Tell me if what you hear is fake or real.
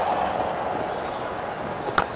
real